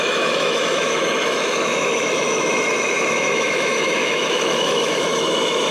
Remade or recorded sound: remade